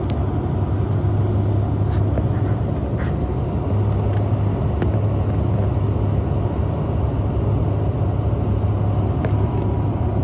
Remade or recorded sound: recorded